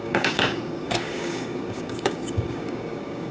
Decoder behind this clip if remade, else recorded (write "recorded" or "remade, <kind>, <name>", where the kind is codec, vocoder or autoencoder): remade, codec, DAC